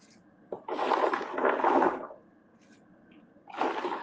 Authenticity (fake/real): real